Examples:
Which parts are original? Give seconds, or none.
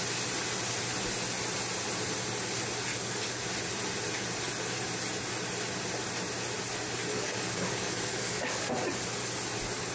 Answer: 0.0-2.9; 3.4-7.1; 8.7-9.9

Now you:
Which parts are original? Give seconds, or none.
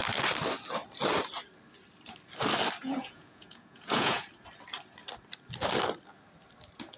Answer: 0.0-2.8; 4.3-7.0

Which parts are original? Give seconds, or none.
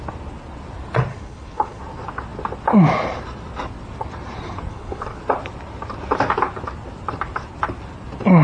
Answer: 0.0-1.1; 1.8-4.7; 5.2-8.4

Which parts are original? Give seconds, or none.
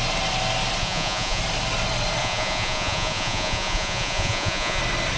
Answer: 0.0-0.8; 1.4-2.2; 4.8-5.2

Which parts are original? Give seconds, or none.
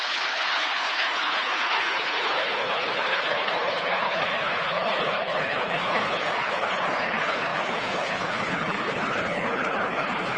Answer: none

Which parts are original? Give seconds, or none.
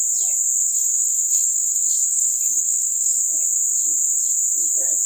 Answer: 0.0-0.7; 3.2-5.1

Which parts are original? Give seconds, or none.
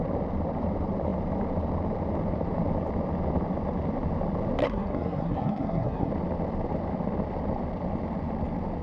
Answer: 0.0-4.6; 6.1-8.8